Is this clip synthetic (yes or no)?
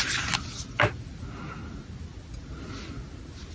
no